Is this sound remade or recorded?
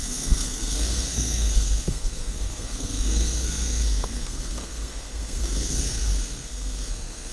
remade